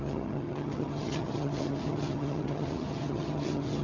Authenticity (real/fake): fake